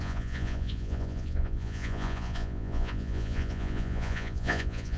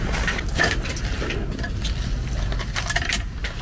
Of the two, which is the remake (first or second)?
first